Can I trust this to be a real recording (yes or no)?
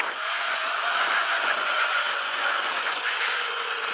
no